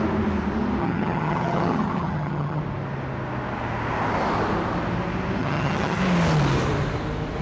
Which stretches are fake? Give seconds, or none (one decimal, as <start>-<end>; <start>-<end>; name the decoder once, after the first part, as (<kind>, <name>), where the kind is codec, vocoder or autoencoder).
0.8-2.6 (vocoder, HiFi-GAN); 5.4-6.0